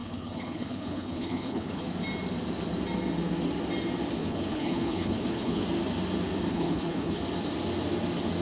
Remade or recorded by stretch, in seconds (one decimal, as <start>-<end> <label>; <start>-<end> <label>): 0.0-1.8 remade; 1.8-4.2 recorded; 4.2-5.6 remade; 5.6-6.5 recorded; 6.5-7.2 remade; 7.2-8.4 recorded